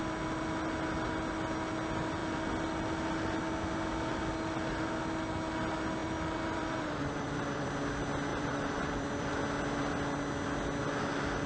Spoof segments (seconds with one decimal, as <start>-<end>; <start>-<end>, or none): 6.0-7.7; 8.3-9.3